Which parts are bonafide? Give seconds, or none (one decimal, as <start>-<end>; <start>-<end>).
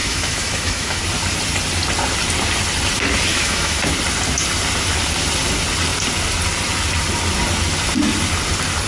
1.0-3.3; 3.8-8.9